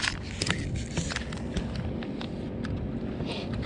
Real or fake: real